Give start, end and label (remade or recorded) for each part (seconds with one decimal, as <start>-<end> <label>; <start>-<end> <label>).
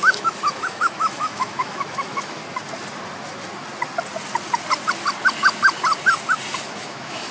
0.0-2.4 remade; 2.4-6.6 recorded; 6.6-7.3 remade